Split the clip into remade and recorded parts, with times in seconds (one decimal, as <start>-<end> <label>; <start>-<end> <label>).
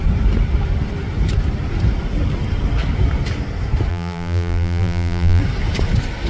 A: 0.0-3.9 recorded; 3.9-5.4 remade; 5.4-6.3 recorded